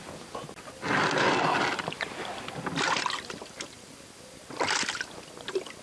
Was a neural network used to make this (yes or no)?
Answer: no